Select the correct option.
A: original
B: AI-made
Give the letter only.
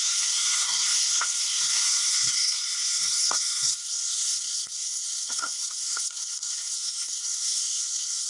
B